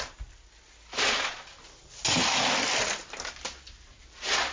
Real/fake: real